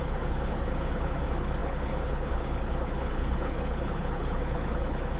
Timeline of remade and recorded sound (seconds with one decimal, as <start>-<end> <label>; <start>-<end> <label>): 0.0-5.2 remade